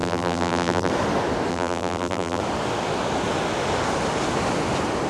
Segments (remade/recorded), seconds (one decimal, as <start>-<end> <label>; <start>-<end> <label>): 0.0-0.9 remade; 0.9-1.5 recorded; 1.5-2.4 remade; 2.4-5.1 recorded